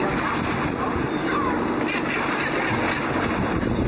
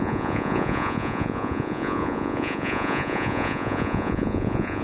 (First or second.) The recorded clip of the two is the first